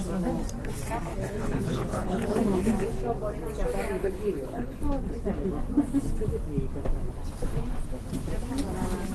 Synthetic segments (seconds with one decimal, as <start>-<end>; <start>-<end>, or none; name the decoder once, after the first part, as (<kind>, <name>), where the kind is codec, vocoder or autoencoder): 1.1-2.4 (codec, HILCodec); 4.0-4.8